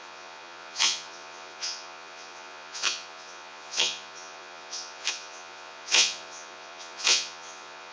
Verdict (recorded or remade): remade